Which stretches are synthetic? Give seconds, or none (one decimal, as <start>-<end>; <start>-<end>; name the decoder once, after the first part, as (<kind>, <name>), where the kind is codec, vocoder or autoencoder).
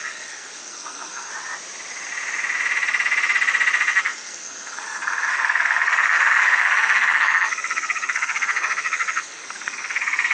0.0-1.3 (codec, SNAC); 4.0-10.3